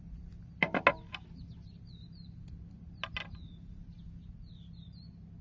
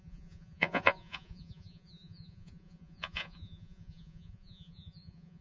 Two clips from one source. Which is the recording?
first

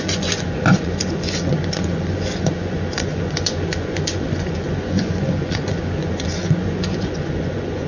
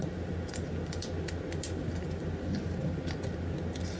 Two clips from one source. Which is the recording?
second